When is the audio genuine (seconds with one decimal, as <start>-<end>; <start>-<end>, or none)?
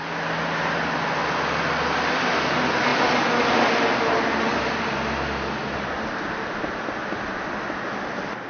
0.0-8.5